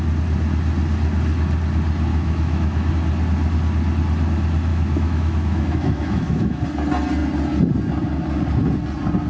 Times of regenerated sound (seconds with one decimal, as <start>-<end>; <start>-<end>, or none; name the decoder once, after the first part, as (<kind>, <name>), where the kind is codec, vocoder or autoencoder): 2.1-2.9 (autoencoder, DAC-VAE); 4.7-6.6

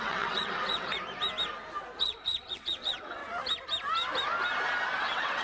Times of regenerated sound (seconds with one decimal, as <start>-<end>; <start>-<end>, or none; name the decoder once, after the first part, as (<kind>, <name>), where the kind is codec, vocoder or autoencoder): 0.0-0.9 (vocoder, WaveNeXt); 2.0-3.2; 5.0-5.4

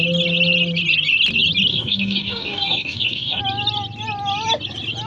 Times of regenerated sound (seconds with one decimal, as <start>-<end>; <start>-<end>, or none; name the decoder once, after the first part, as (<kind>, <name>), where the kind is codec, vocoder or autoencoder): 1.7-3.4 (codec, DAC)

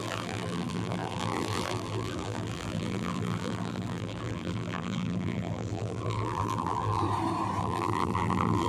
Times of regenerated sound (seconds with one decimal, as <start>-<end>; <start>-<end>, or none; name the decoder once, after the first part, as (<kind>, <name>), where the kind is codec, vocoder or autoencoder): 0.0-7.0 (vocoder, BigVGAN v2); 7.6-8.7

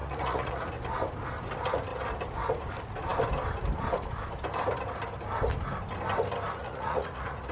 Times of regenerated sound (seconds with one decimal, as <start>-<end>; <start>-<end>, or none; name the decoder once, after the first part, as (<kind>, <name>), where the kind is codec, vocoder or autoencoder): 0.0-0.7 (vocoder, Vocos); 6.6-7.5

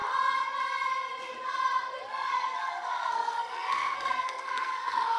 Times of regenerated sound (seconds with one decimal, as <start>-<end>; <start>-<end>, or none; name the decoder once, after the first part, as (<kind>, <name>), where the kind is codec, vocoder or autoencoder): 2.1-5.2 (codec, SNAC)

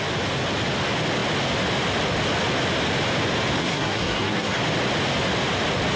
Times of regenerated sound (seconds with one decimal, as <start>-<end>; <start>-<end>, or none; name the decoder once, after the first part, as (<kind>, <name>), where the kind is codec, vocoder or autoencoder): 3.6-4.6 (codec, SNAC)

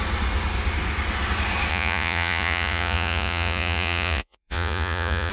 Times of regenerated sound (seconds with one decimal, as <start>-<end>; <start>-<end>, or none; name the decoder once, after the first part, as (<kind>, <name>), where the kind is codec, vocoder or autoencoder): 1.7-5.3 (vocoder, Vocos)